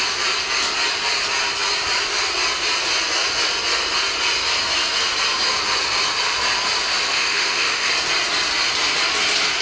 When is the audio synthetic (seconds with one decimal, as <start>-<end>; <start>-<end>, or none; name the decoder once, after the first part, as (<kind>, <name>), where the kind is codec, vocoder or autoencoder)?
7.1-7.9 (autoencoder, DAC-VAE)